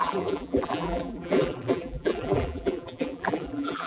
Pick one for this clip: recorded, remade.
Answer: remade